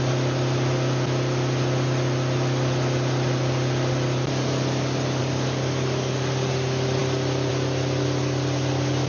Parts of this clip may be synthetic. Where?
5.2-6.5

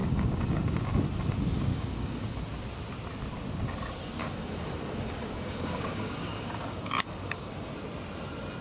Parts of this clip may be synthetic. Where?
0.0-0.6; 1.7-2.4; 4.2-7.5

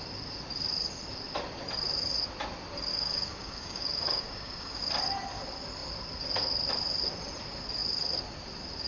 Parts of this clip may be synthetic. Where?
2.9-4.8

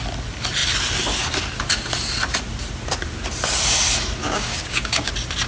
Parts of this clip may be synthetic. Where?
4.2-5.1